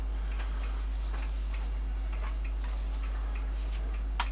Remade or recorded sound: recorded